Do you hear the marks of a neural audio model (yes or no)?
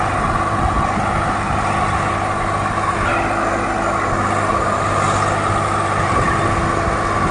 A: no